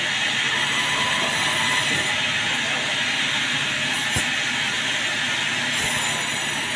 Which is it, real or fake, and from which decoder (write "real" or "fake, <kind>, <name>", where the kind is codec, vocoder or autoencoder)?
real